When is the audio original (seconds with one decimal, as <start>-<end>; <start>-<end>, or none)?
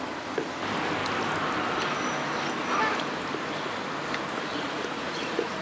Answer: 0.0-4.5